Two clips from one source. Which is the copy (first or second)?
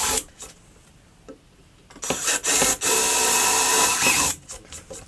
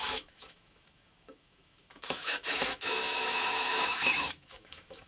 second